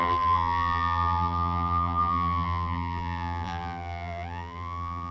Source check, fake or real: fake